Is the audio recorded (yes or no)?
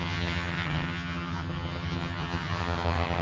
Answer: no